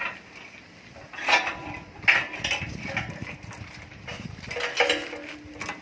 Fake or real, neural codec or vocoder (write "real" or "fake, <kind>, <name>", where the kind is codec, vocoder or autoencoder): real